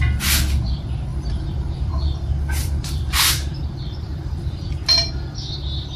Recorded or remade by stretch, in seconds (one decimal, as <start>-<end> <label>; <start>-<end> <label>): 0.0-1.1 recorded; 1.1-4.7 remade; 4.7-6.0 recorded